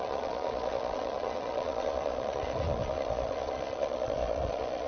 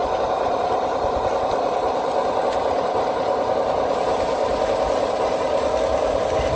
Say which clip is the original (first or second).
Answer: second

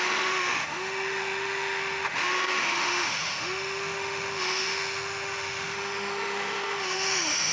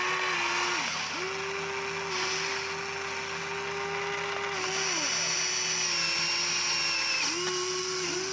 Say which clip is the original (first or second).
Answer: second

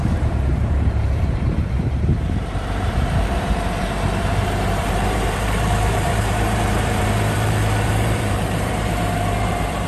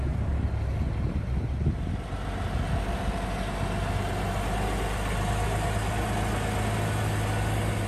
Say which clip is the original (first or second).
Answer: second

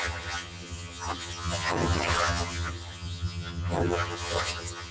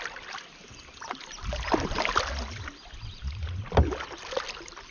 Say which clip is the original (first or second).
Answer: second